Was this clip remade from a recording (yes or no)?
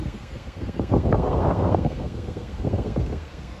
yes